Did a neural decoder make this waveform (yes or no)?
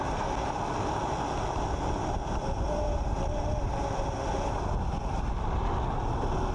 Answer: no